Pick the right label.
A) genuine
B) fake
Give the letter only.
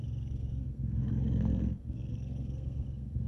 B